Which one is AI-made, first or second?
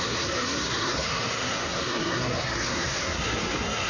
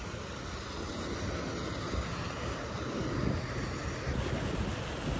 first